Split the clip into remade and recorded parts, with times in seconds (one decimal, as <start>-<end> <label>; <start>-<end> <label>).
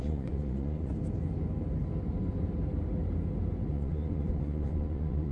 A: 0.0-0.9 remade; 0.9-3.7 recorded; 3.7-5.3 remade